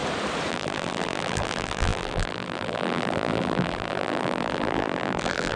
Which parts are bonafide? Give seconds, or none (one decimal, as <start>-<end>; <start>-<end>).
0.0-0.5